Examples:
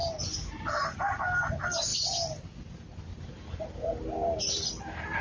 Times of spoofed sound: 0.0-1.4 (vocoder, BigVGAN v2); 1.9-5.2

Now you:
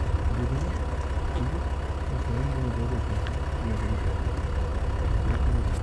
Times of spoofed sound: none

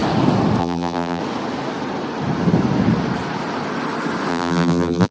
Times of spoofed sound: 0.6-1.2 (vocoder, BigVGAN v2); 4.3-5.1

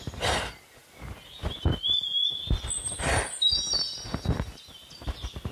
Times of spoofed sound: none

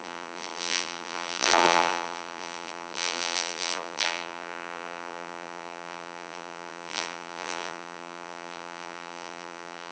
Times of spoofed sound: 0.0-9.9 (vocoder, BigVGAN v2)

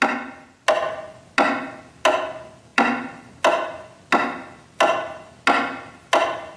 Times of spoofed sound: none